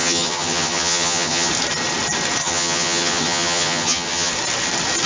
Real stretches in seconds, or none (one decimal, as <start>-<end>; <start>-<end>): 1.5-2.4; 4.3-5.1